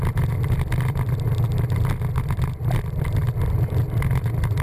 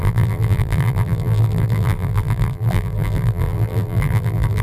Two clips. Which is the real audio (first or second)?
first